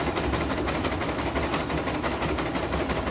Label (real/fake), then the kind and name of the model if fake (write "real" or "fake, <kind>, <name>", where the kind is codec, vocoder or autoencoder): real